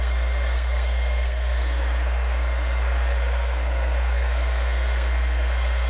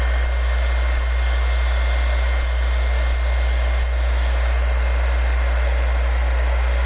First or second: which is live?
second